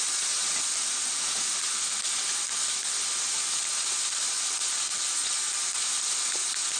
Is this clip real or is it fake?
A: real